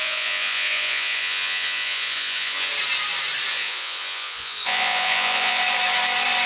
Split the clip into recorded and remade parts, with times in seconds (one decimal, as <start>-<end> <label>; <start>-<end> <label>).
0.0-2.7 remade; 2.7-3.5 recorded; 3.5-5.6 remade; 5.6-6.5 recorded

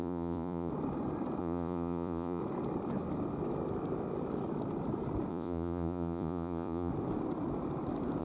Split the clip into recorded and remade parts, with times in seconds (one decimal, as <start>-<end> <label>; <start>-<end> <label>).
0.0-0.7 remade; 0.7-1.4 recorded; 1.4-2.4 remade; 2.4-5.3 recorded; 5.3-6.9 remade; 6.9-8.2 recorded

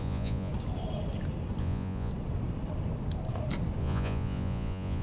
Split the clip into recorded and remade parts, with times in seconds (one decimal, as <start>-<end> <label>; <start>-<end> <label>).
0.0-0.5 remade; 0.5-1.6 recorded; 1.6-2.1 remade; 2.1-3.8 recorded; 3.8-5.0 remade

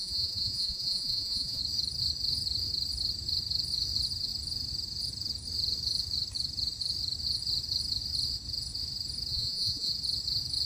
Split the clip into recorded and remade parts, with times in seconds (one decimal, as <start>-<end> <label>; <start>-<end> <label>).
0.0-1.6 remade; 1.6-9.3 recorded; 9.3-9.9 remade; 9.9-10.7 recorded